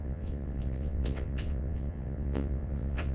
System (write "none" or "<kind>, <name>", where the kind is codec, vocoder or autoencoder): vocoder, WaveNeXt